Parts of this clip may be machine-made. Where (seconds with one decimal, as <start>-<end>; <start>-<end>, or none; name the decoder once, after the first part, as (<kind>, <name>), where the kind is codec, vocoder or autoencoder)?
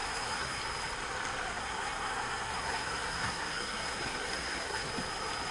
0.0-0.6 (codec, SNAC); 1.6-4.9